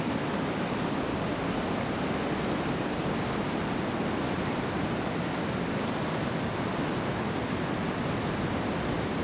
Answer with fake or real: real